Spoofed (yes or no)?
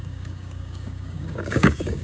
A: yes